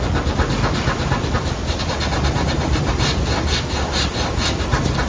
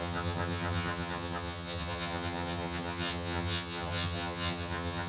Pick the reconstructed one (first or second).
second